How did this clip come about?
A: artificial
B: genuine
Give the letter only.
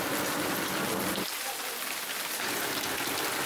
B